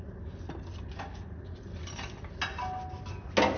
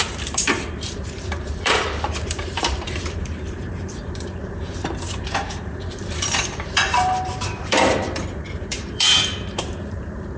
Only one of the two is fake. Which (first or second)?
second